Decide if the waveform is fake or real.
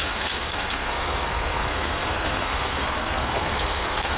fake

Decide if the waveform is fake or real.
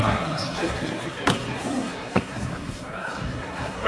fake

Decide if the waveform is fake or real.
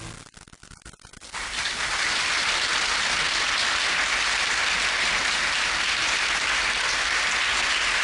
real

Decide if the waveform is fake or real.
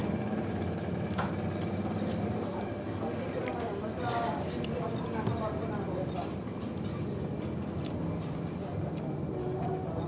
real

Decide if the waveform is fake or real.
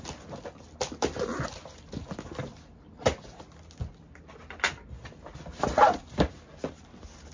real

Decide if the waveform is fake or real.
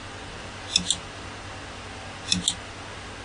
real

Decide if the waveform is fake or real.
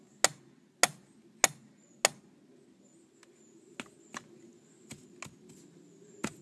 real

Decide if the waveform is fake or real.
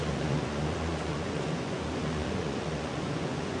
fake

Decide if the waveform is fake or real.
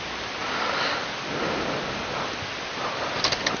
real